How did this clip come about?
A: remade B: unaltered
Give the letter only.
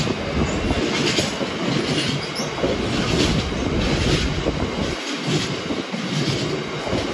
B